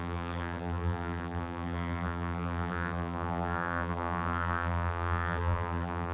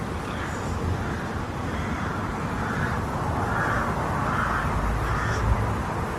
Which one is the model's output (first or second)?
first